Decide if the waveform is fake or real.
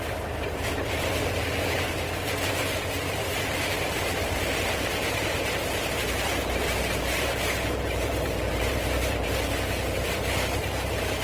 fake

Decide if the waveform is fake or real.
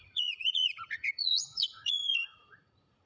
fake